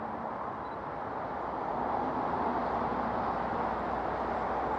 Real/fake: real